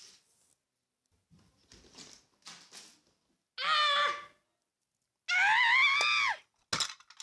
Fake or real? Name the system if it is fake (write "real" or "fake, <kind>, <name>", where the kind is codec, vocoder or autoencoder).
real